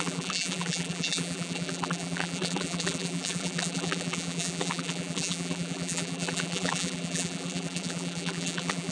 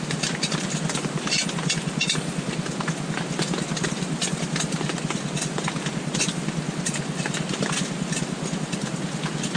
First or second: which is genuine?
second